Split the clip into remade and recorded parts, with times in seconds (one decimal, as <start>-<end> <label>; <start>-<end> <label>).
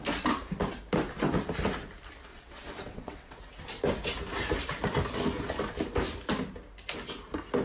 0.0-2.3 recorded; 2.3-3.4 remade; 3.4-7.6 recorded